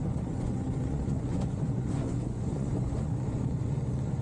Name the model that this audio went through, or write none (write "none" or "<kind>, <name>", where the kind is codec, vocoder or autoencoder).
vocoder, Vocos